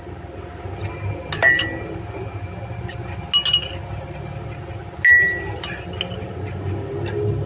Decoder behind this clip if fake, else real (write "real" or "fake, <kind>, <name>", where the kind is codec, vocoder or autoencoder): real